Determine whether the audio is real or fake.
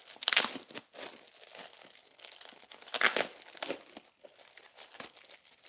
real